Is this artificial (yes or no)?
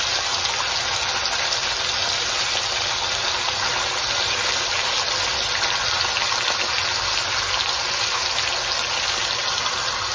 no